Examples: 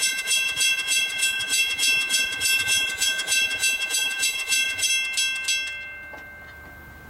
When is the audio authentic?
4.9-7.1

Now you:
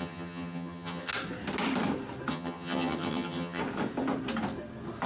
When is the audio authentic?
1.1-2.3; 3.6-5.1